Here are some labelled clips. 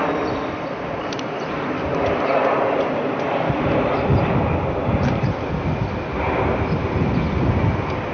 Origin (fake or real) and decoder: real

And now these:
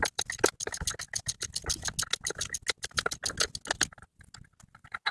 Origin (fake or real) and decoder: real